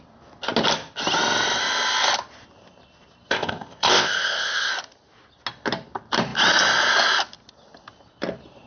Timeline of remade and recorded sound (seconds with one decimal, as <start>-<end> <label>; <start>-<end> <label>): 0.0-3.3 recorded; 3.3-4.7 remade; 4.7-8.7 recorded